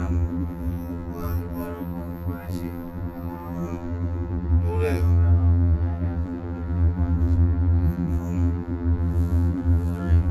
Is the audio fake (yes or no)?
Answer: yes